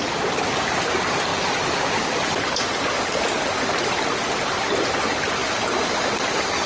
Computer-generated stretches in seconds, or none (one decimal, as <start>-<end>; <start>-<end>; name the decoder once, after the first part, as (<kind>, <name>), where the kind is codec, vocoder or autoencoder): none

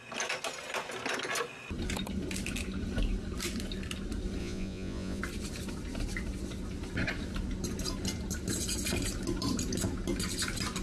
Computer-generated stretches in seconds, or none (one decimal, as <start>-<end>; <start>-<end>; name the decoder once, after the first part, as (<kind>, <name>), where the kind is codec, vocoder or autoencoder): 4.4-5.2 (vocoder, Vocos)